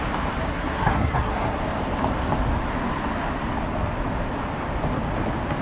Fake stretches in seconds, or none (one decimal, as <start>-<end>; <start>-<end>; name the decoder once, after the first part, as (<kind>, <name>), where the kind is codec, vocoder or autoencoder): 0.5-1.6 (codec, SNAC)